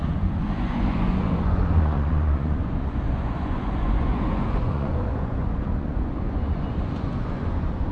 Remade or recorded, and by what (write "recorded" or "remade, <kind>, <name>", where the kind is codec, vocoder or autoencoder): remade, vocoder, Vocos